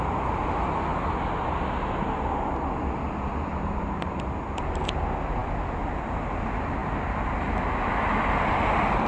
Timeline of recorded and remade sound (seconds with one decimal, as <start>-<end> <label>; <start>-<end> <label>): 0.0-9.1 recorded